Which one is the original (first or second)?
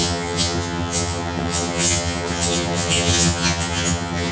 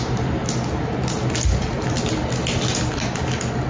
second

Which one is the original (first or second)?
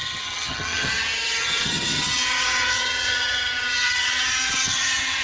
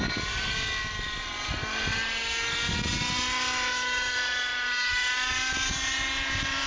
second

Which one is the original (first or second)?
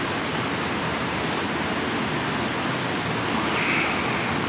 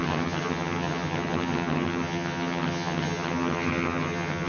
first